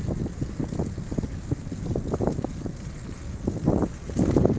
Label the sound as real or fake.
real